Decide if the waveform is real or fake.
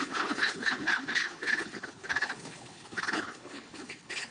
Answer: fake